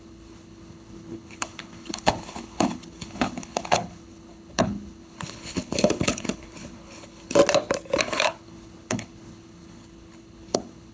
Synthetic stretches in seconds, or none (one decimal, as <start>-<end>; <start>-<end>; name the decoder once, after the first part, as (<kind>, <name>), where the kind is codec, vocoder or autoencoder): 0.0-7.4 (codec, HILCodec); 8.0-10.9